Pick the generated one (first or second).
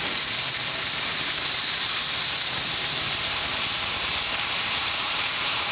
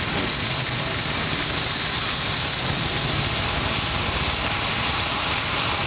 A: first